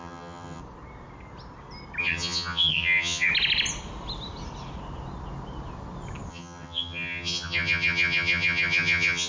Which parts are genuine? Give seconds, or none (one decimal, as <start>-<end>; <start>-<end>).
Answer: 0.6-2.0; 3.3-6.3